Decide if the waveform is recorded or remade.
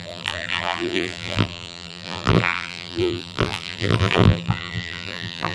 remade